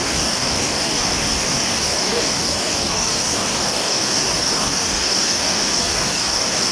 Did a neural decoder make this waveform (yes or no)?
yes